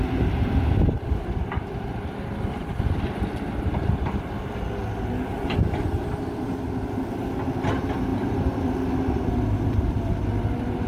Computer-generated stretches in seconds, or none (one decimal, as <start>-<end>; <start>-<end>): 8.1-10.3